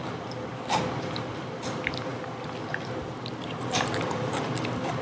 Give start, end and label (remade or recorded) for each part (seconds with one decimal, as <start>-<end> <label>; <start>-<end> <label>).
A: 0.0-1.0 recorded; 1.0-2.1 remade; 2.1-3.8 recorded; 3.8-5.0 remade